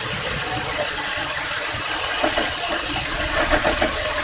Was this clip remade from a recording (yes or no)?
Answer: yes